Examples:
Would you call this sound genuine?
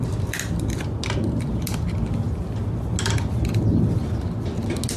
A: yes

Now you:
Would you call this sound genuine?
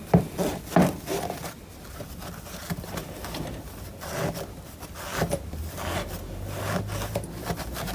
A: yes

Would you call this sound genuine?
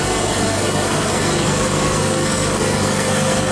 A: no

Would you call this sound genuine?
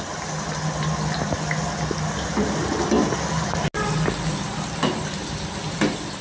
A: yes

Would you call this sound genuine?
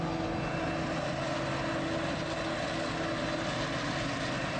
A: yes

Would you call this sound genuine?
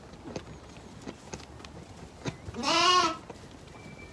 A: yes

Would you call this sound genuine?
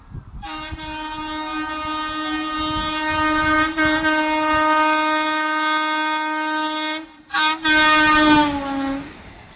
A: yes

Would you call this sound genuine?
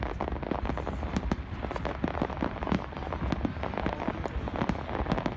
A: yes